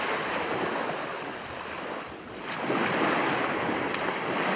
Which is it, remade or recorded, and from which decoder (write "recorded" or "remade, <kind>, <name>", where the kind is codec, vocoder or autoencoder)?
recorded